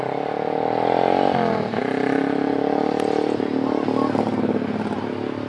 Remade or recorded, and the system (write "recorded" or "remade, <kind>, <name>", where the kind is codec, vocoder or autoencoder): recorded